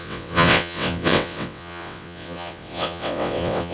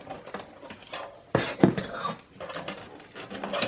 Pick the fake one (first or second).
first